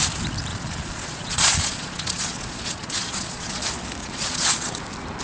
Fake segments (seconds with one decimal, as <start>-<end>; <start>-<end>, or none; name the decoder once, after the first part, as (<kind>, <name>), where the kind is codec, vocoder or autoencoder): 0.5-3.6 (vocoder, Vocos); 4.0-4.8